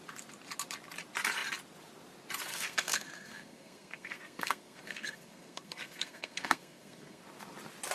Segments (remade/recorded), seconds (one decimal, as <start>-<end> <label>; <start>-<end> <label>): 0.0-2.5 recorded; 2.5-7.2 remade; 7.2-7.9 recorded